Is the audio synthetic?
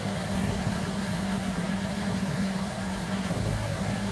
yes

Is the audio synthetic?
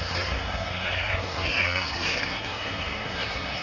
yes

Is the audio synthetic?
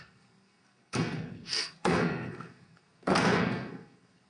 yes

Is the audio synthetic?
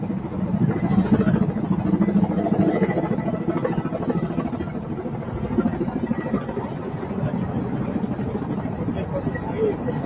no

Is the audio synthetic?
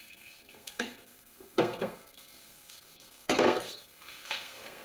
yes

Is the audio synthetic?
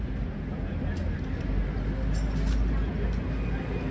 no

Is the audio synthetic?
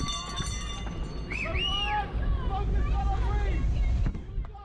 no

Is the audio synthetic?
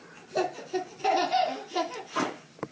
no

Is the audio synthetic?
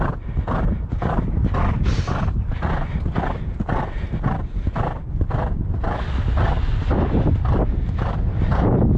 no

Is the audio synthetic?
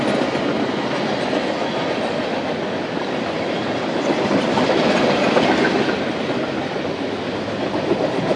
no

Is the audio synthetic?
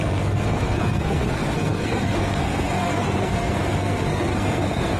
yes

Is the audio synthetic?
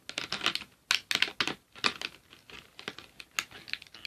no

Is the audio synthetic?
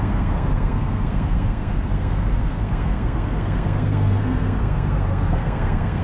yes